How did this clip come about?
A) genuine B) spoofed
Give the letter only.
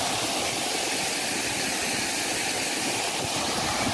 A